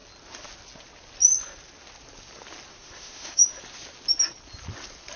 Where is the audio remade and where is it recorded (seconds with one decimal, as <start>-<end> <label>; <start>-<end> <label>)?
0.0-2.7 recorded; 2.7-3.4 remade; 3.4-5.2 recorded